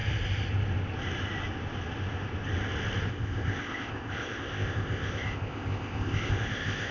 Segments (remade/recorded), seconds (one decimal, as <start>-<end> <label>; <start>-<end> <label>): 0.0-3.1 recorded; 3.1-6.9 remade